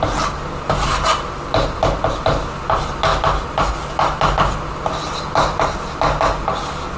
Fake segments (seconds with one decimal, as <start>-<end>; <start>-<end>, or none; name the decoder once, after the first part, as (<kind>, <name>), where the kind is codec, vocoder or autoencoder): none